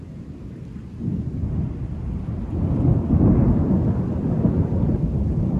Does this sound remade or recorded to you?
recorded